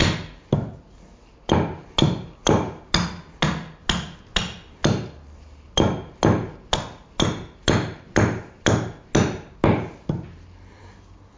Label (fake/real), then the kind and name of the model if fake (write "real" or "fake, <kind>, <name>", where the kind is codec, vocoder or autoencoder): real